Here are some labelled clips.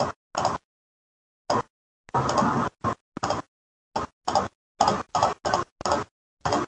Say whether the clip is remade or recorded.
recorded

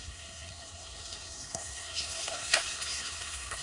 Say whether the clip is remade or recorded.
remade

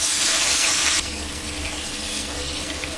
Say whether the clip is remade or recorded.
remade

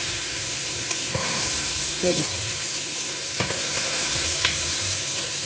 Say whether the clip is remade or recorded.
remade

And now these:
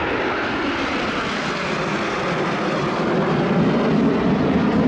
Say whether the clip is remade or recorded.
recorded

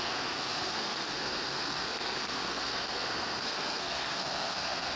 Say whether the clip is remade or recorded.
remade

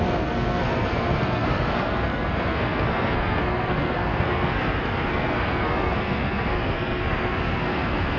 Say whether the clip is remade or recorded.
remade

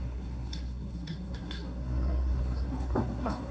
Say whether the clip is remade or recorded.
remade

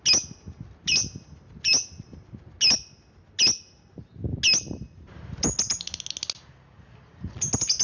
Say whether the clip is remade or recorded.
recorded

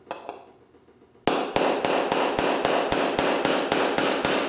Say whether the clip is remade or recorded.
recorded